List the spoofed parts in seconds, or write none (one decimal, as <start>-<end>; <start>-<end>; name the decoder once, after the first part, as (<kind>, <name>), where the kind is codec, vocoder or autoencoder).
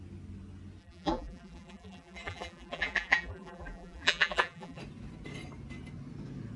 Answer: 0.8-4.8 (vocoder, BigVGAN v2)